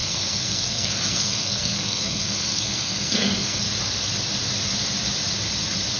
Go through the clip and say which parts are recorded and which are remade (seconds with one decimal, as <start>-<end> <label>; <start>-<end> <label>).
0.0-3.6 remade; 3.6-6.0 recorded